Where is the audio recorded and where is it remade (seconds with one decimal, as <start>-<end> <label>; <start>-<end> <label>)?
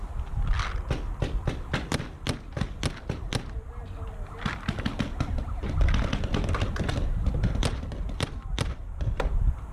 0.0-9.7 recorded